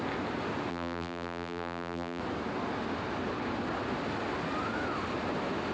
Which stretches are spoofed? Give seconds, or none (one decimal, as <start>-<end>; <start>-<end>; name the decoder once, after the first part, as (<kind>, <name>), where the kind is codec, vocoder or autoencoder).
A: 0.7-2.2 (vocoder, BigVGAN v2)